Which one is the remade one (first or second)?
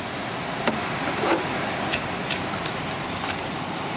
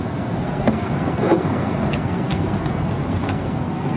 second